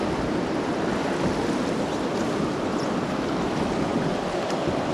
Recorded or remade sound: recorded